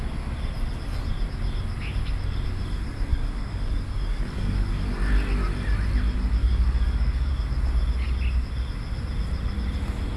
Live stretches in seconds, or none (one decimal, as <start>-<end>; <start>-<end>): 0.0-3.1; 4.9-6.4; 7.3-10.2